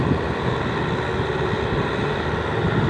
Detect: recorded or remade recorded